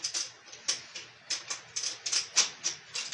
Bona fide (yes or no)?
yes